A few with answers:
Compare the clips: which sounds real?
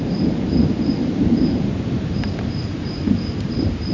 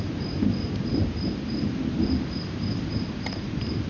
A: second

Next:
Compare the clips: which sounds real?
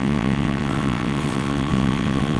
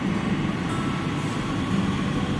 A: second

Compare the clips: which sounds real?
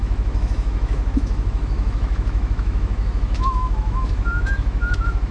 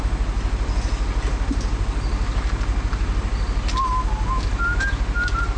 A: second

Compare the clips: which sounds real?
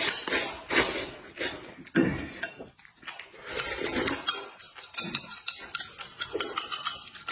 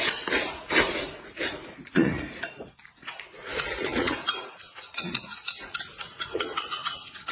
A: first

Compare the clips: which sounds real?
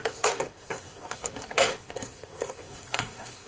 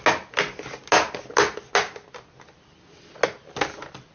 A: second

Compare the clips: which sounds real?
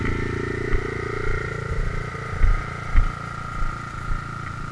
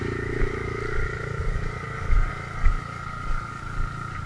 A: first